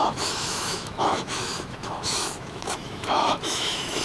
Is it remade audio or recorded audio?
remade